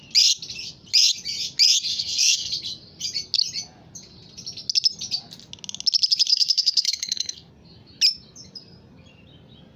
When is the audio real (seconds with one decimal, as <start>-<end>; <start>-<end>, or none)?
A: 0.0-1.9; 2.5-6.3; 7.5-9.8

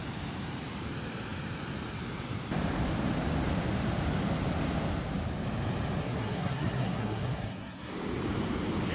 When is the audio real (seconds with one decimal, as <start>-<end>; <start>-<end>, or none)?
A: 0.0-6.0; 7.9-8.9

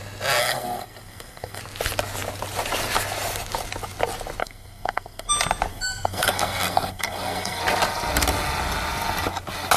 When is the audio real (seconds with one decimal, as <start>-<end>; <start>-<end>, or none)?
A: 0.0-0.4; 1.6-4.4; 5.3-5.7; 7.6-9.8

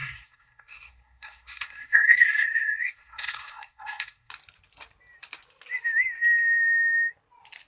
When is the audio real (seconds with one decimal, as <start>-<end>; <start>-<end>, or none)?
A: 4.3-7.7

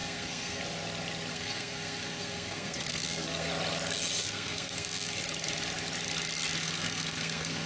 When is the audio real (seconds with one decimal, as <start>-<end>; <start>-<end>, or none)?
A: 0.6-1.3; 3.5-4.2; 5.2-6.6

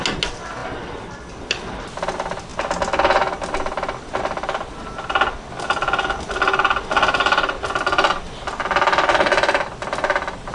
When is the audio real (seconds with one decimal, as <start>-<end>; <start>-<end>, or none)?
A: 0.0-10.5

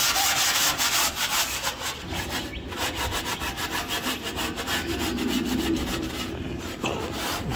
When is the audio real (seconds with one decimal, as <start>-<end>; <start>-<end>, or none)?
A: 0.0-7.6